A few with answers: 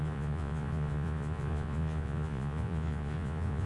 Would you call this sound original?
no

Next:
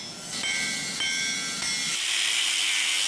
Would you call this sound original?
yes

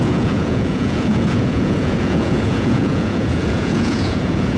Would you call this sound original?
no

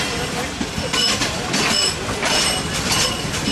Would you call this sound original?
yes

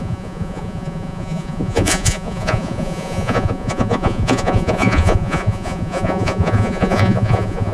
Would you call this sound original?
no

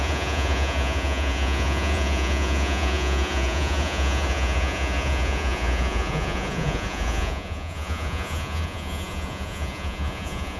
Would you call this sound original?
no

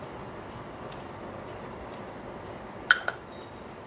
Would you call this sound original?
yes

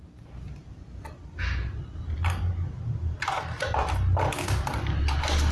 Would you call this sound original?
yes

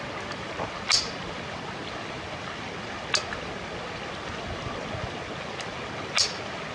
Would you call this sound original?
yes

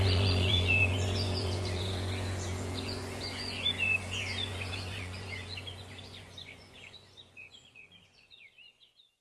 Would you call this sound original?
no